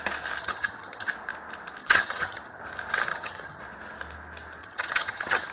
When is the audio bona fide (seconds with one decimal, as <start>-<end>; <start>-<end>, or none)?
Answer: 0.0-0.4; 1.1-1.8; 2.6-3.1; 3.6-4.6